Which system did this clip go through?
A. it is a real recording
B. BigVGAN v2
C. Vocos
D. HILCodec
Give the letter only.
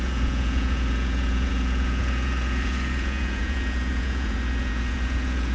C